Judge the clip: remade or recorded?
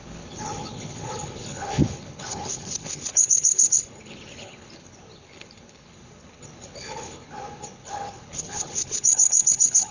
remade